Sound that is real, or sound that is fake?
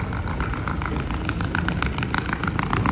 real